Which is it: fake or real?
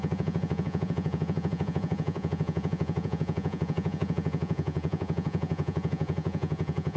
fake